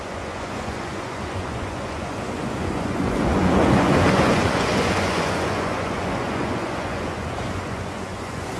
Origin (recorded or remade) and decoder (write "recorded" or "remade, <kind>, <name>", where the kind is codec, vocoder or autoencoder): remade, vocoder, Vocos